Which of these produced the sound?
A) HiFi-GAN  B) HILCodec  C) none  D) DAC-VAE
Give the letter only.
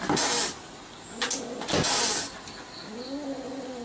C